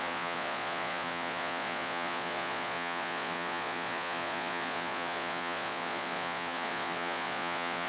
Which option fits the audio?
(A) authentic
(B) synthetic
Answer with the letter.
B